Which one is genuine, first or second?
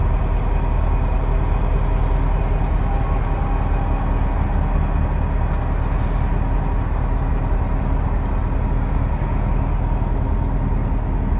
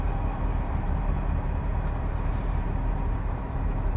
first